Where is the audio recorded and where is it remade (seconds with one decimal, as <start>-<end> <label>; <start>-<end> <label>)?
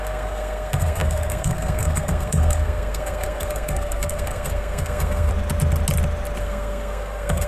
0.0-5.3 remade; 5.3-6.4 recorded; 6.4-7.5 remade